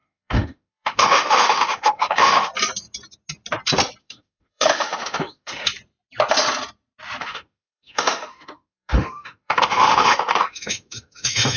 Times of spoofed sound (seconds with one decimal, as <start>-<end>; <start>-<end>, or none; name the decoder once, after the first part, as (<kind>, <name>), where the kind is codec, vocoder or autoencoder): 0.0-2.5 (autoencoder, DAC-VAE); 4.0-5.7; 7.2-11.6